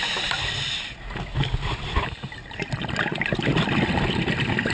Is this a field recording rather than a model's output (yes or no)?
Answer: yes